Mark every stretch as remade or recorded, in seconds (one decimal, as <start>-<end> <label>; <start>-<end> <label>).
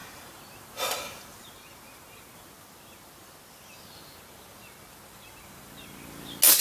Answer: 0.0-6.6 recorded